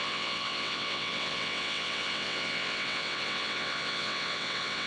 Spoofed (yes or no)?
yes